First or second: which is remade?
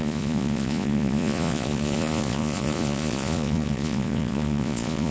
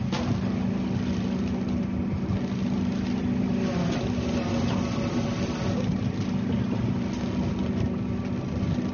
first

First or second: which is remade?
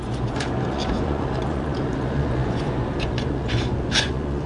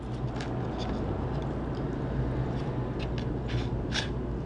first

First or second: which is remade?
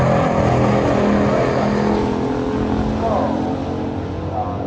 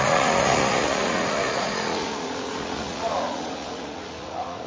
second